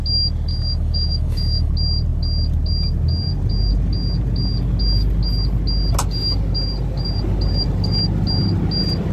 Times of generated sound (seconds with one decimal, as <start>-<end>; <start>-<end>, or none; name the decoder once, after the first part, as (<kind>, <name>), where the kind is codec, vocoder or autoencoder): 0.5-1.7 (autoencoder, DAC-VAE)